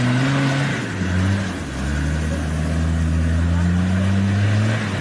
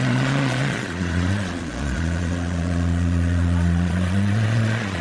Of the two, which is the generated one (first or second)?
second